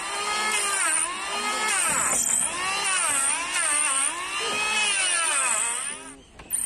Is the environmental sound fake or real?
real